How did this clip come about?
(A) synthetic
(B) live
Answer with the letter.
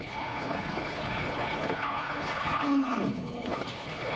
A